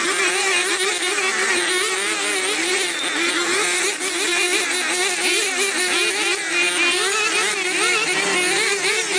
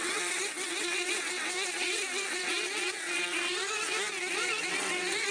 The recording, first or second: first